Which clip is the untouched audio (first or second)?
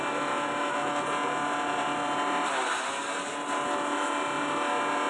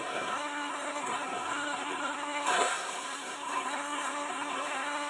first